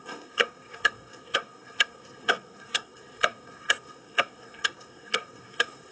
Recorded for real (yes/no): no